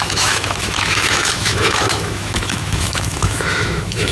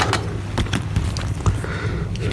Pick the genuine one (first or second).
second